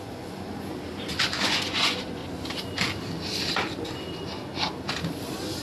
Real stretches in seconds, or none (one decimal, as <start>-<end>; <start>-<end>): 0.5-1.4; 2.2-5.6